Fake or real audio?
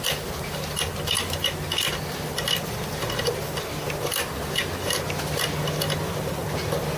real